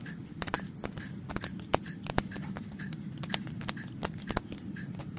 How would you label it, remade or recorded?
recorded